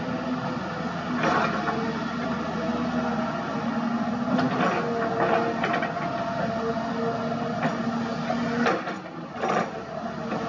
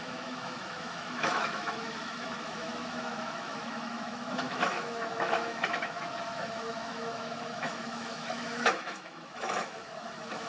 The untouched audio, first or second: first